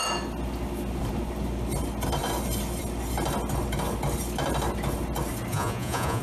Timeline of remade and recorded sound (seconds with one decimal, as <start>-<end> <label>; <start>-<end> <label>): 0.0-5.5 recorded; 5.5-6.2 remade